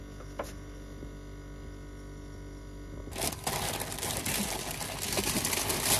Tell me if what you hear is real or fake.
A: real